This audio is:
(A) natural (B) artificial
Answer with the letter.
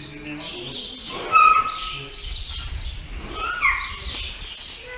A